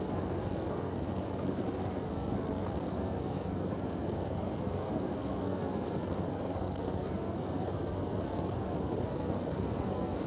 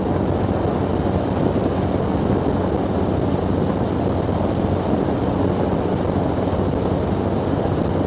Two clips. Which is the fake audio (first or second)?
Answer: first